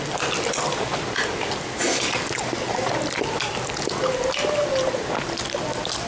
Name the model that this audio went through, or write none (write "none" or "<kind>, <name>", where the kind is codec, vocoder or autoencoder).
none